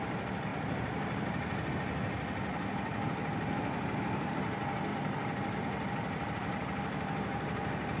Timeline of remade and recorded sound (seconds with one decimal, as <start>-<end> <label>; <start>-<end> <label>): 0.0-2.5 recorded; 2.5-3.1 remade; 3.1-4.9 recorded; 4.9-5.6 remade; 5.6-8.0 recorded